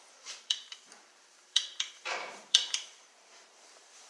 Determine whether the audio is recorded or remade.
remade